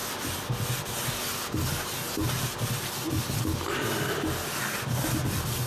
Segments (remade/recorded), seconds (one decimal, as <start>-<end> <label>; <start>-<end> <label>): 0.0-5.7 recorded